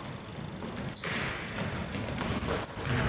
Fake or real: real